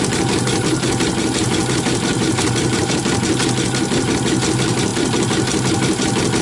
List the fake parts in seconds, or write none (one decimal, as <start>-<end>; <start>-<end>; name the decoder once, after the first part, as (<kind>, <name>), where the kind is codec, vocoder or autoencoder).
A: 2.1-2.9 (vocoder, BigVGAN v2)